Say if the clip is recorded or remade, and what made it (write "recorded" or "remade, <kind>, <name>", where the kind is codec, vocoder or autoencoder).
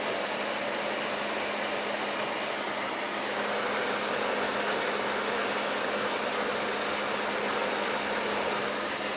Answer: recorded